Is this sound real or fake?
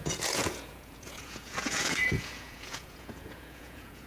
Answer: fake